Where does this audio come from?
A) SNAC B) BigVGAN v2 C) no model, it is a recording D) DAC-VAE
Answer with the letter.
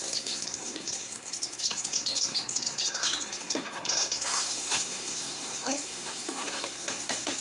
A